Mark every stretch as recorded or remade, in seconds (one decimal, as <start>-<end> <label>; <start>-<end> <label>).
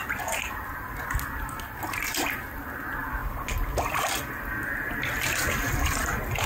0.0-3.2 recorded; 3.2-4.3 remade; 4.3-6.5 recorded